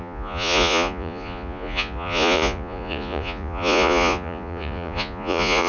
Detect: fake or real fake